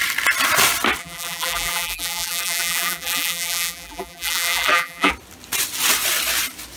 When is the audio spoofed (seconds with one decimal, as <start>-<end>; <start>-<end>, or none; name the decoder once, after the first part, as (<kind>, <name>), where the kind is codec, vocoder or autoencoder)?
1.0-5.1 (vocoder, BigVGAN v2)